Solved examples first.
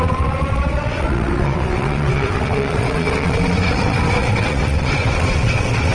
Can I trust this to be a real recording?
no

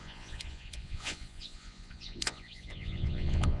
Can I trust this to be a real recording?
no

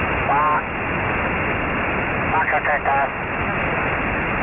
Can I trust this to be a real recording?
yes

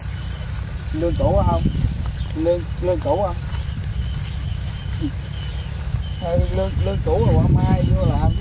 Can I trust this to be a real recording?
yes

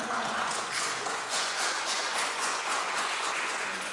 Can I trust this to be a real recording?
no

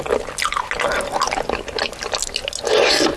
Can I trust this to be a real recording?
yes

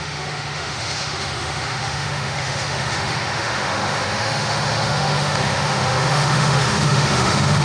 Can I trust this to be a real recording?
no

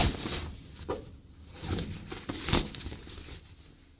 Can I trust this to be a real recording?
yes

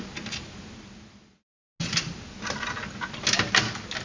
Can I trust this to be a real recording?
yes